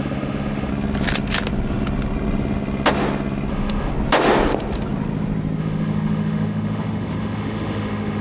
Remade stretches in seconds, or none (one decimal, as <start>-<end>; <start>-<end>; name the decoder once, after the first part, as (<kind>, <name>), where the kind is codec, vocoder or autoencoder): 0.0-0.7 (autoencoder, DAC-VAE); 3.5-3.9; 5.6-8.2